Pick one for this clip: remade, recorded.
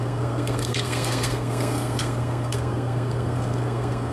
remade